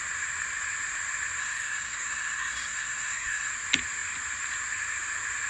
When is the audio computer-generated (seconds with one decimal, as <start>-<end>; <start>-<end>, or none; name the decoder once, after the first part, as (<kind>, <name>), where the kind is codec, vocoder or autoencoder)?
1.4-3.5 (codec, SNAC)